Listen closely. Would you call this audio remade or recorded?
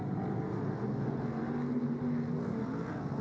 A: recorded